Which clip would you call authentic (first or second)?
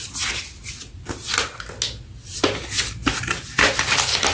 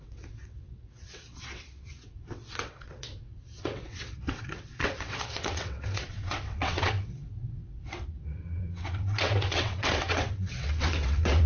first